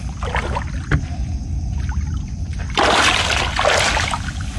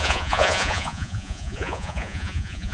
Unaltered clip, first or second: first